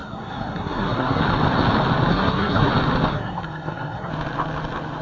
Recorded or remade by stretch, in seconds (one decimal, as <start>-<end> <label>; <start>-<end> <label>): 0.0-1.2 remade; 1.2-2.1 recorded; 2.1-2.7 remade; 2.7-3.1 recorded; 3.1-4.1 remade; 4.1-5.0 recorded